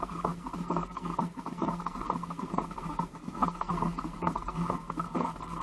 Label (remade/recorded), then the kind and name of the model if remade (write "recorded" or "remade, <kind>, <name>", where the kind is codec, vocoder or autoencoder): remade, codec, SNAC